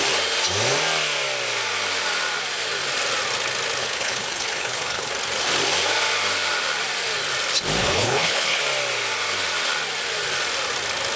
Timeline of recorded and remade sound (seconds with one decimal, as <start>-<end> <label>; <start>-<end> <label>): 0.0-3.8 recorded; 3.8-5.1 remade; 5.1-7.8 recorded; 7.8-8.6 remade; 8.6-11.2 recorded